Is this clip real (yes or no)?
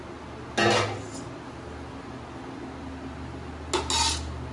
yes